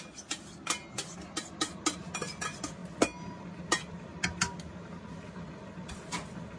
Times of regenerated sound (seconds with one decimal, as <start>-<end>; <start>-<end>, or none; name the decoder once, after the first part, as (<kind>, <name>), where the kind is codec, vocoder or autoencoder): none